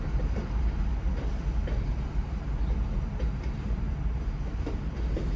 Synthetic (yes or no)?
no